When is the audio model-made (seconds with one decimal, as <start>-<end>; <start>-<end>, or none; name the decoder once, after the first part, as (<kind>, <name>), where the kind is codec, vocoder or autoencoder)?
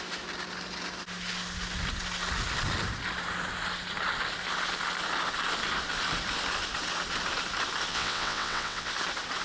7.9-8.9 (vocoder, WaveNeXt)